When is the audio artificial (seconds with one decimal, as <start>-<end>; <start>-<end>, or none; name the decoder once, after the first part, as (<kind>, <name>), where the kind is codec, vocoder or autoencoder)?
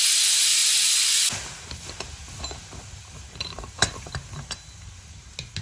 none